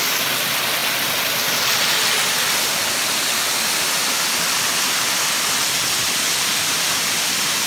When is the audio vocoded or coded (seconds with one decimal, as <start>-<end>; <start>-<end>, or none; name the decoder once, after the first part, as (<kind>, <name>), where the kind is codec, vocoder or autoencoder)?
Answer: none